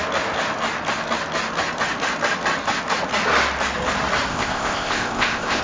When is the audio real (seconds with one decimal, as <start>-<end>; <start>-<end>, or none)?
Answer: 0.0-4.3